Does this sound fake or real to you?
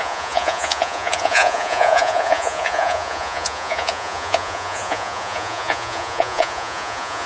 fake